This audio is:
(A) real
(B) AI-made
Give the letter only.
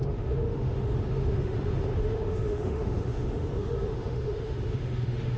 B